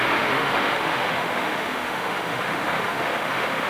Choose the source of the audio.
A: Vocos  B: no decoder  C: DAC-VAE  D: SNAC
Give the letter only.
C